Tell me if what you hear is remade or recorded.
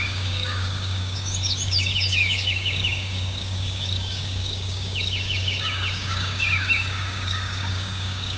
remade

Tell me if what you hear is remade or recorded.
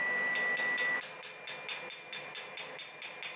recorded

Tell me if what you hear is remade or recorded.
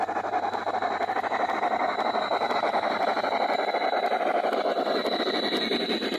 recorded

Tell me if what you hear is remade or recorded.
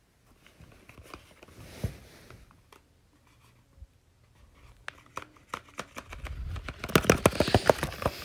recorded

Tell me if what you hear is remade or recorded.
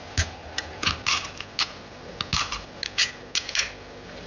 recorded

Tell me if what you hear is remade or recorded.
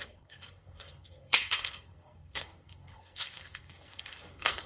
remade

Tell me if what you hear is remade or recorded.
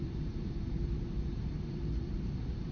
remade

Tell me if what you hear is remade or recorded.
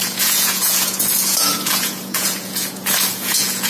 remade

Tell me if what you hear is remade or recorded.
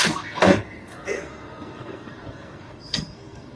remade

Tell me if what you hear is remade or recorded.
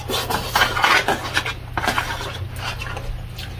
recorded